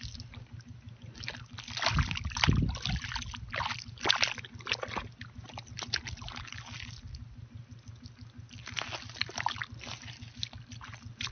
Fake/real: real